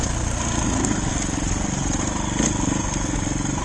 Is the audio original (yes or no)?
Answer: yes